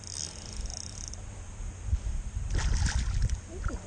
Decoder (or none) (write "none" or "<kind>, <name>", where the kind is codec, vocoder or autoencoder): none